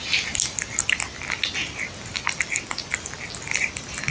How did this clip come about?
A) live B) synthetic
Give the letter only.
A